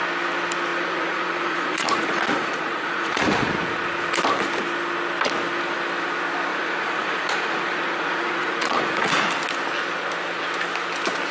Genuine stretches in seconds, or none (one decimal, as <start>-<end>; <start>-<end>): 0.0-0.7; 3.5-6.5; 9.1-11.3